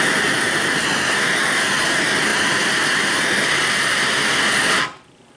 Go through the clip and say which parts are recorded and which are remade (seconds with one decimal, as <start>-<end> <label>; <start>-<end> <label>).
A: 0.0-5.4 recorded